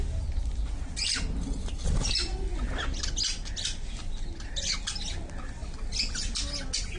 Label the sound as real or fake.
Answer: real